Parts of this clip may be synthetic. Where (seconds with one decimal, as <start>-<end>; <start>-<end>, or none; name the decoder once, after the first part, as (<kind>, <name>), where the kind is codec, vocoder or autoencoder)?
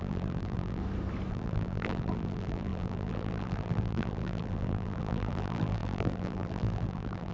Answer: 0.0-0.8 (vocoder, BigVGAN v2); 1.3-7.3